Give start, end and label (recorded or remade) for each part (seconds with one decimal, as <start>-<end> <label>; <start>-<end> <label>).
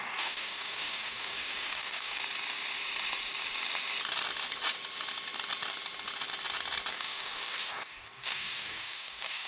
0.0-2.2 remade; 2.2-6.9 recorded; 6.9-9.5 remade